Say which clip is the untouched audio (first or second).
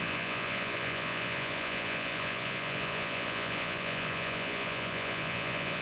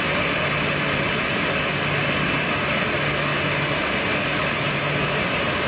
second